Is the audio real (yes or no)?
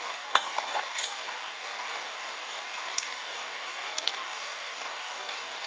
no